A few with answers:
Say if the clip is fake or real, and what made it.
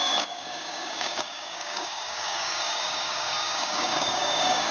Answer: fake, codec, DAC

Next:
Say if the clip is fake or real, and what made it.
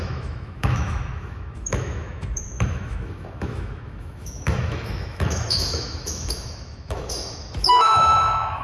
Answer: fake, autoencoder, DAC-VAE